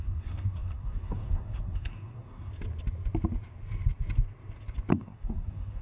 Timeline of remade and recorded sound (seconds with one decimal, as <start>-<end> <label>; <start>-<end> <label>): 0.0-2.5 remade; 2.5-4.9 recorded; 4.9-5.8 remade